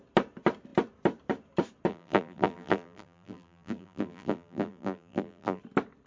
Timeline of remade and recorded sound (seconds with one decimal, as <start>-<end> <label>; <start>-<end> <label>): 0.0-1.9 recorded; 1.9-5.6 remade; 5.6-6.1 recorded